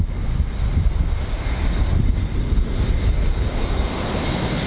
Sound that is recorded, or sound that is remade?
recorded